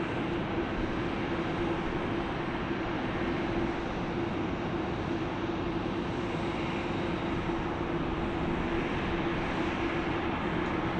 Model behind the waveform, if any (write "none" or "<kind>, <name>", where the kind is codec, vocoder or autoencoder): none